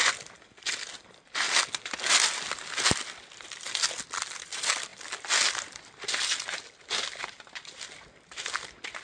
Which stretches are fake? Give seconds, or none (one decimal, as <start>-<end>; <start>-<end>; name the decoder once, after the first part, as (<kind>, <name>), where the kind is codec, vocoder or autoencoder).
none